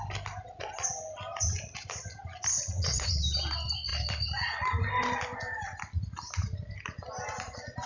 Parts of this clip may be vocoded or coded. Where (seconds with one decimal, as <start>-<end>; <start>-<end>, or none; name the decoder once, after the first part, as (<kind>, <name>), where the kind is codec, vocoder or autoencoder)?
2.5-3.1 (vocoder, WaveNeXt)